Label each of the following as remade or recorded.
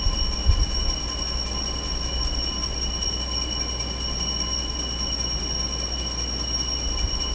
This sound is recorded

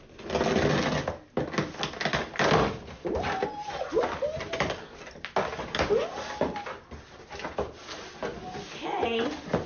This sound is recorded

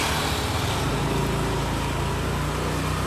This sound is recorded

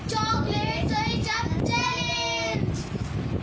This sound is recorded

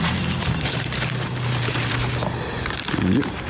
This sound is remade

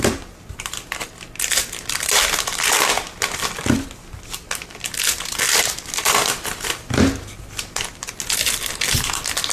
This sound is recorded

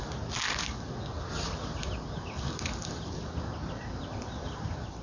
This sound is recorded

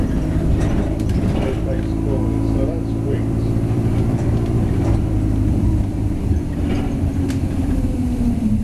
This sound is remade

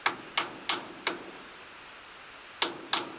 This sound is recorded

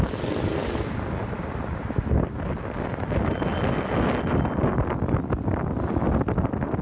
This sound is recorded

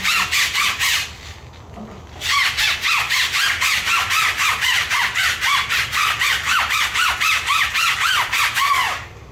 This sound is recorded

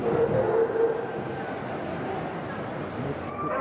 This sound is recorded